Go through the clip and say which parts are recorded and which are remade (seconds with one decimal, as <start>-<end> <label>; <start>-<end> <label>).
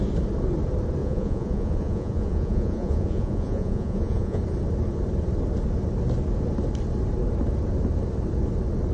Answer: 0.0-1.0 recorded; 1.0-4.4 remade; 4.4-8.9 recorded